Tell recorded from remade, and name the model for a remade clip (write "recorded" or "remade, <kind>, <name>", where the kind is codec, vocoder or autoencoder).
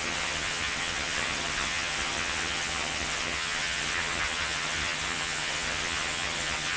remade, vocoder, HiFi-GAN